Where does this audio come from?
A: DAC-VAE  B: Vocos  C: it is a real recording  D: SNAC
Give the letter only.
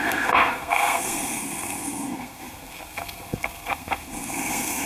D